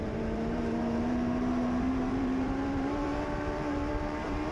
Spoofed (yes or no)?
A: yes